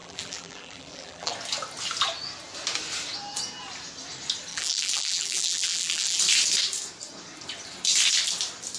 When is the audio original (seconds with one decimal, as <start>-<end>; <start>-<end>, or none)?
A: 1.3-4.5; 6.2-8.8